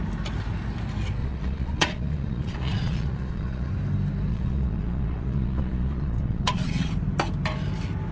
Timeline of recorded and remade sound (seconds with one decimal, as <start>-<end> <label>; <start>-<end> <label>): 0.0-1.2 recorded; 1.2-3.7 remade; 3.7-4.3 recorded; 4.3-6.9 remade; 6.9-8.1 recorded